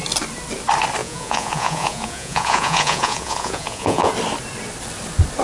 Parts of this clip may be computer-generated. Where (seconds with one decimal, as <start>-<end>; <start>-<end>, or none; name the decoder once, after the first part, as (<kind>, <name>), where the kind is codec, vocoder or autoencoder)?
1.0-4.1 (vocoder, Vocos)